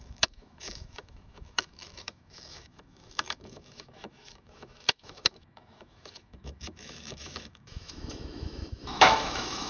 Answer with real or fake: fake